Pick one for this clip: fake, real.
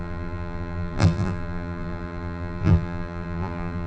fake